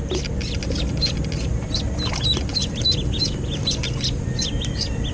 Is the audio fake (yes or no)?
no